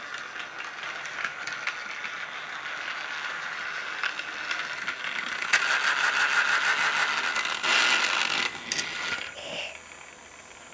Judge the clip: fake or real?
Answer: real